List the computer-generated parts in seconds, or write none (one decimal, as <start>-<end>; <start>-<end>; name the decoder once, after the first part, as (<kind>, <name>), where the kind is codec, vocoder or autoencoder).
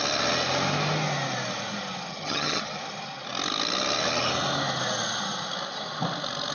2.1-2.8 (vocoder, HiFi-GAN)